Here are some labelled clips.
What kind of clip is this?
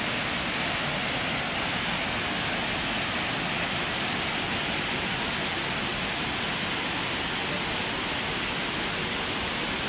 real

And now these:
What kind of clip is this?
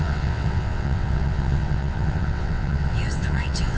fake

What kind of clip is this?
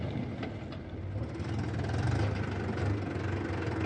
real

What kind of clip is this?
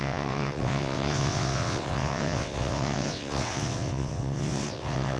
fake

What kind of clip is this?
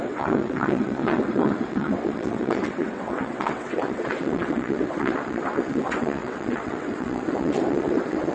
fake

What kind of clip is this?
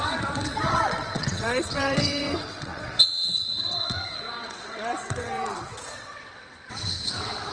fake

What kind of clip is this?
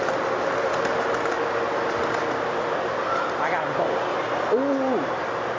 real